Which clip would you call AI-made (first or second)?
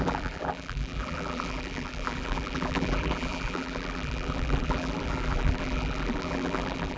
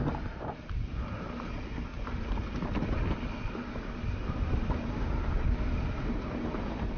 first